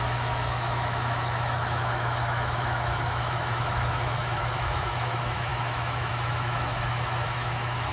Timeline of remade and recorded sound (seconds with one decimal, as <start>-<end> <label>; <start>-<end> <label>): 0.0-7.9 remade